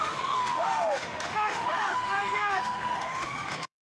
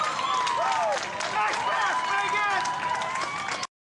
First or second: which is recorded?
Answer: second